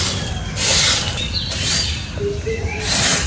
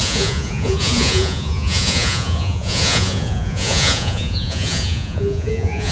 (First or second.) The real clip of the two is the first